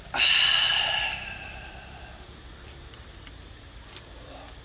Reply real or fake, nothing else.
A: real